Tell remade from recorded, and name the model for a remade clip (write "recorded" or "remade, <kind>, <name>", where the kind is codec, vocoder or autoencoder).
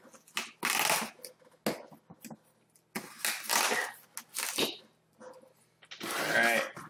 recorded